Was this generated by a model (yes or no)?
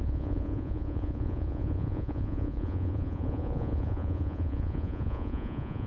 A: yes